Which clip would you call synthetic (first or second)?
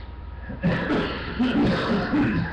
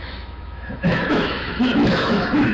second